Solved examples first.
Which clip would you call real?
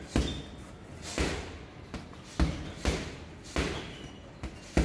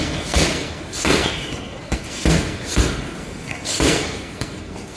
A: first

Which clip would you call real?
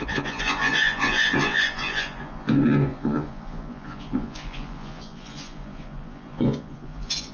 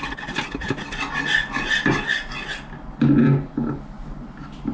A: second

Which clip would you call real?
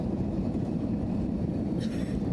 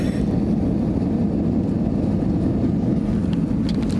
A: second